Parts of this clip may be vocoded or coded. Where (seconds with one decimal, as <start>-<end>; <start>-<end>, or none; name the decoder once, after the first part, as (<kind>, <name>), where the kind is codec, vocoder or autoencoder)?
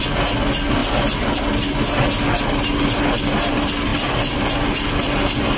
none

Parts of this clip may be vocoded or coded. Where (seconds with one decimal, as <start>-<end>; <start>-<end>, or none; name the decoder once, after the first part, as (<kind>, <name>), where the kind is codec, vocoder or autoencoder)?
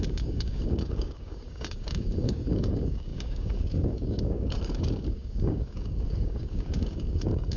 0.0-7.6 (codec, DAC)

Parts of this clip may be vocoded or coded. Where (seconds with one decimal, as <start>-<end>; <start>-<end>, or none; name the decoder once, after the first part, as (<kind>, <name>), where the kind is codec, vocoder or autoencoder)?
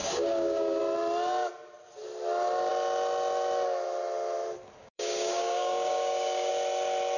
0.0-0.8 (codec, DAC); 4.8-6.5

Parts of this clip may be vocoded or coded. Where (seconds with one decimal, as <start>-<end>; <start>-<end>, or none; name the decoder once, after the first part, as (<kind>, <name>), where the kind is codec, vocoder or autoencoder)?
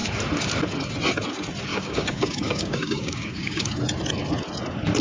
1.7-3.7 (codec, DAC)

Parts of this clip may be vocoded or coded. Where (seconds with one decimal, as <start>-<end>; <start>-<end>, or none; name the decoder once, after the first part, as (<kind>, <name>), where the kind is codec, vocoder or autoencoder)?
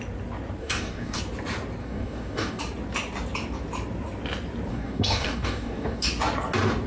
0.6-1.2 (codec, DAC); 1.8-2.6; 4.7-6.1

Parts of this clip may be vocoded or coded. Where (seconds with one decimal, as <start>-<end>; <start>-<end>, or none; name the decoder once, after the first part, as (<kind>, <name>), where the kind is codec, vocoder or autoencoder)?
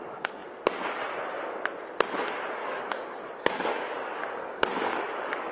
2.6-5.5 (codec, DAC)